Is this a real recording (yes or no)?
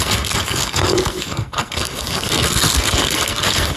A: no